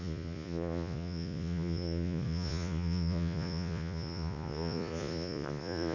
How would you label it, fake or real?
fake